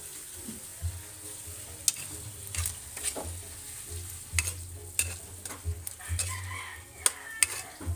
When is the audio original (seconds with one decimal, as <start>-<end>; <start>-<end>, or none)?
0.0-8.0